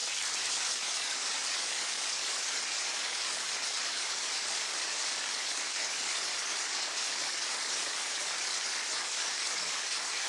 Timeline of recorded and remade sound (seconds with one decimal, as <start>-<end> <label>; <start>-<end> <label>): 0.0-0.5 recorded; 0.5-10.3 remade